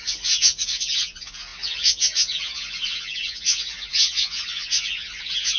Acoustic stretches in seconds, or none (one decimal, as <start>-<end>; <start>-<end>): none